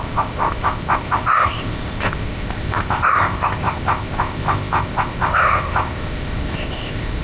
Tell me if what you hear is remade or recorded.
remade